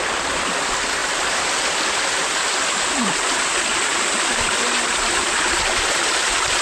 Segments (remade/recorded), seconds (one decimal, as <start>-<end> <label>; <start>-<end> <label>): 0.0-6.6 recorded